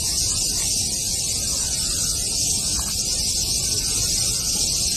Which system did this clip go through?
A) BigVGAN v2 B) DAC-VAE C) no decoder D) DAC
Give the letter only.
C